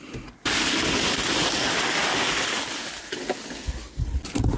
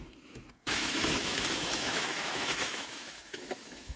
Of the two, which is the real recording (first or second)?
first